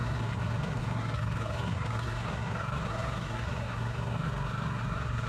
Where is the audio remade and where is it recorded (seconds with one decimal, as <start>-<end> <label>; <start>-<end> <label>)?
0.0-5.3 remade